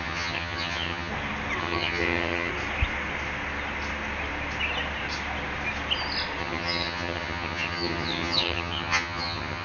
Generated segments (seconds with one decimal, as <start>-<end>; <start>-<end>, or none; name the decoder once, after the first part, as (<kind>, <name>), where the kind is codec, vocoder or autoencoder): 0.0-1.1 (vocoder, HiFi-GAN); 1.6-2.5; 6.4-9.6

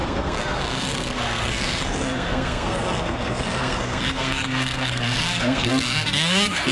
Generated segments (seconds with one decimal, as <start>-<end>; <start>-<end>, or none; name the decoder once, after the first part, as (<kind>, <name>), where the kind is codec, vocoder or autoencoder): 0.0-6.7 (codec, SNAC)

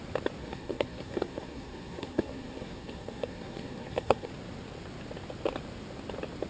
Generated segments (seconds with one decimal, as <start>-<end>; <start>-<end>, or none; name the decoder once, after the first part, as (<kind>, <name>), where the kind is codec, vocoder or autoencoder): 0.4-4.3 (codec, SNAC)